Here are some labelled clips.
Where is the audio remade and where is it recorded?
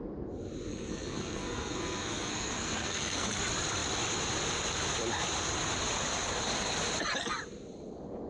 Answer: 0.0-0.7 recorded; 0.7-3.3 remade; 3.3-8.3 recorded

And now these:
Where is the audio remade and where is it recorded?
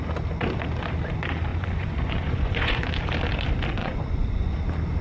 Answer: 0.0-1.5 recorded; 1.5-2.8 remade; 2.8-3.8 recorded; 3.8-4.6 remade; 4.6-5.0 recorded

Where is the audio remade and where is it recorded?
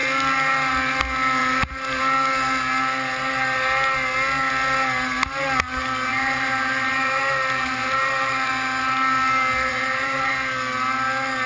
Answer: 0.0-1.4 recorded; 1.4-2.0 remade; 2.0-6.1 recorded; 6.1-8.5 remade; 8.5-9.7 recorded; 9.7-10.3 remade; 10.3-11.5 recorded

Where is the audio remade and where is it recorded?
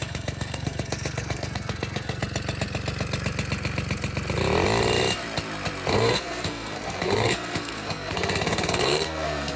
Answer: 0.0-2.2 remade; 2.2-5.9 recorded; 5.9-9.6 remade